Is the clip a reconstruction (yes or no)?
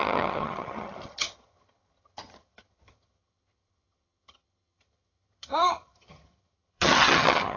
yes